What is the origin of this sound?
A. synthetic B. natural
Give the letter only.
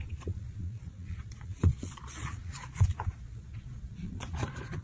A